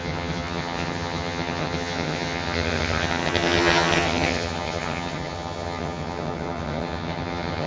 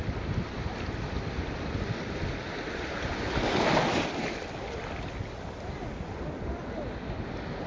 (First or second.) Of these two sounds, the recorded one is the second